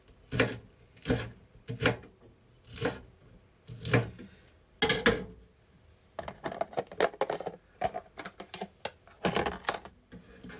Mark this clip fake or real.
real